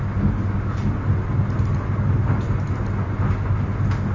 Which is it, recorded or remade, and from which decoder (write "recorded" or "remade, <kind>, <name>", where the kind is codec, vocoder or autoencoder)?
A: recorded